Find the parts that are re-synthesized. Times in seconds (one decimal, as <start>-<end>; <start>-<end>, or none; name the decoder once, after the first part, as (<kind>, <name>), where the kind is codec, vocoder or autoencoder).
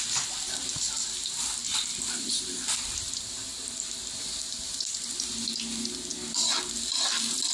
0.0-7.5 (vocoder, BigVGAN v2)